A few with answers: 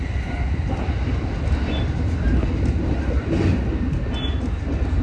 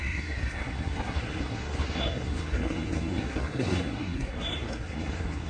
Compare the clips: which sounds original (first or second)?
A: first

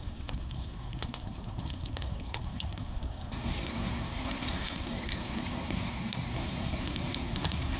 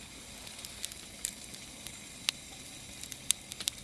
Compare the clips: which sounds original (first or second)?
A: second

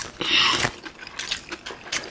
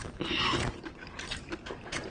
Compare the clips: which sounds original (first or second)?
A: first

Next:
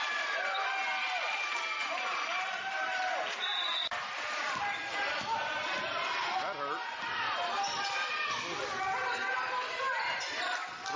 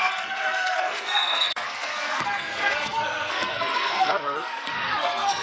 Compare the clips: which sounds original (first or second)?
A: first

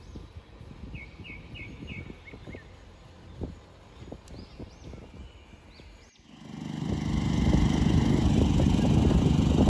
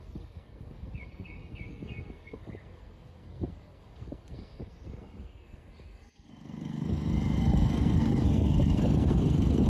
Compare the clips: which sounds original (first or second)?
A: first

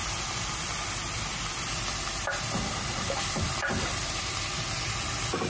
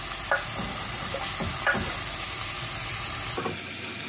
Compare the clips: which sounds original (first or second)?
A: second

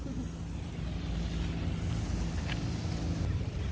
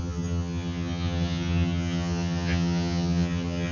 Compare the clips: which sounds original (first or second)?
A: first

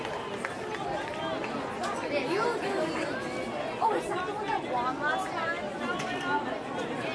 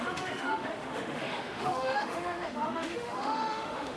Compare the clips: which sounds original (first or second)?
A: first